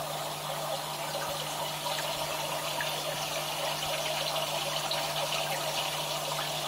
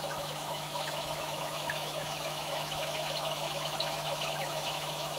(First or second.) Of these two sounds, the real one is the first